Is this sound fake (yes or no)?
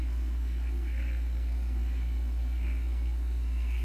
yes